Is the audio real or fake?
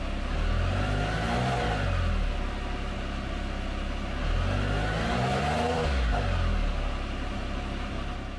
real